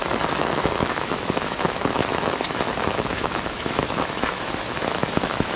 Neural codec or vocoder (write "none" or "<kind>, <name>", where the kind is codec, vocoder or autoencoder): autoencoder, DAC-VAE